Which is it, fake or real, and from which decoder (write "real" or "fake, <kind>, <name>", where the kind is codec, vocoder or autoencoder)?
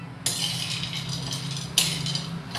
real